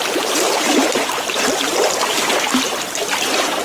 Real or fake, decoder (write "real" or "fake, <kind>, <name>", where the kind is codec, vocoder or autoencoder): fake, vocoder, BigVGAN v2